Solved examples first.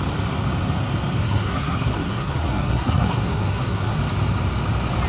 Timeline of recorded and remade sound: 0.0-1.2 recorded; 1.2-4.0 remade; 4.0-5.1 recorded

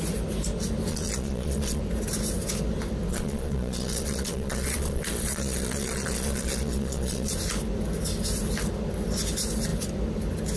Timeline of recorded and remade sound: 0.0-0.9 recorded; 0.9-1.8 remade; 1.8-3.1 recorded; 3.1-7.3 remade; 7.3-10.6 recorded

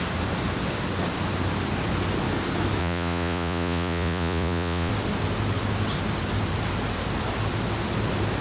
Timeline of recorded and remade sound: 0.0-2.8 recorded; 2.8-4.9 remade; 4.9-8.4 recorded

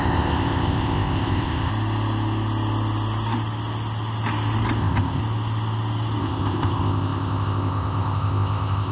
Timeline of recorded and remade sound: 0.0-1.7 remade; 1.7-4.8 recorded; 4.8-5.2 remade; 5.2-6.2 recorded; 6.2-8.9 remade

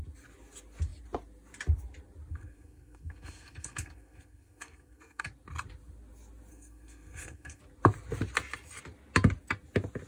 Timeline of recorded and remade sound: 0.0-2.3 recorded; 2.3-5.3 remade; 5.3-6.5 recorded; 6.5-7.6 remade; 7.6-10.1 recorded

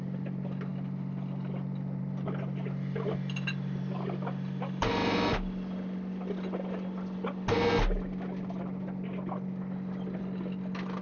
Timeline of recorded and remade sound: 0.0-11.0 recorded

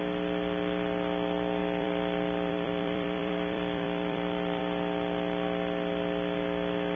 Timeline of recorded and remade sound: 0.0-1.6 recorded; 1.6-4.6 remade; 4.6-7.0 recorded

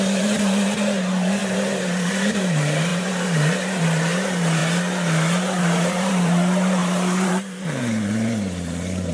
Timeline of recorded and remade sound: 0.0-4.6 remade; 4.6-5.6 recorded; 5.6-9.1 remade